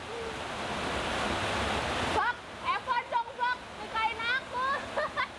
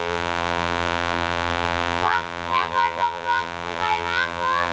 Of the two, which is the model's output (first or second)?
second